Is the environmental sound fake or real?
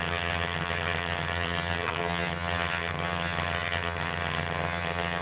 fake